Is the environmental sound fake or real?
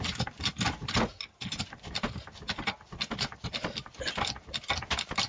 real